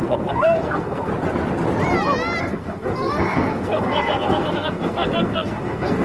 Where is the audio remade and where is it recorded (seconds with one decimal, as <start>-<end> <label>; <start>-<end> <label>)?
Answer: 0.0-1.1 remade; 1.1-2.4 recorded; 2.4-6.0 remade